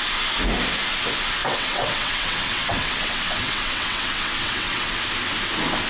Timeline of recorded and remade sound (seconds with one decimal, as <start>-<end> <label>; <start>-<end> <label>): 0.0-1.4 recorded; 1.4-4.9 remade; 4.9-5.9 recorded